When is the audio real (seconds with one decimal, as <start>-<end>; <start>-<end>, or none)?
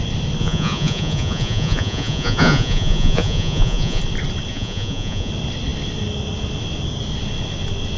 0.0-0.4; 4.0-4.5; 5.3-8.0